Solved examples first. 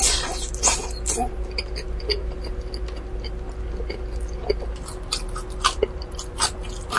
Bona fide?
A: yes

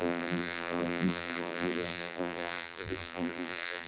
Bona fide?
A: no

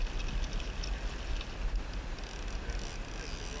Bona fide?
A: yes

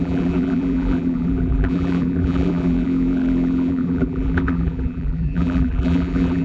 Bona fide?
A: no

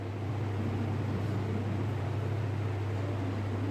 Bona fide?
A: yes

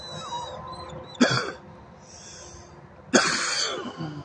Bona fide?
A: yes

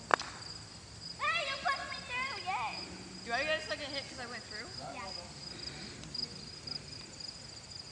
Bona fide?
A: yes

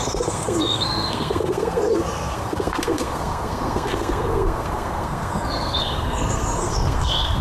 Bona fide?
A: no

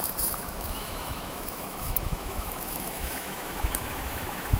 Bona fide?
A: no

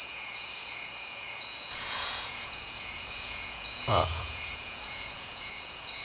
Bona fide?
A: no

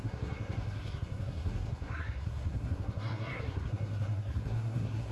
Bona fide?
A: no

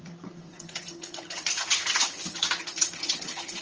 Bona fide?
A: no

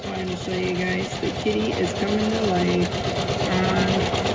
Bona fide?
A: yes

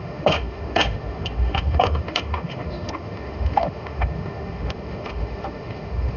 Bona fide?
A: no